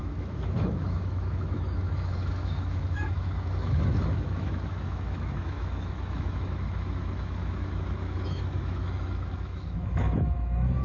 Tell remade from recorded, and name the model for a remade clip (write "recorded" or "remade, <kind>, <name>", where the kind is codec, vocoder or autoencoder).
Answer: remade, autoencoder, DAC-VAE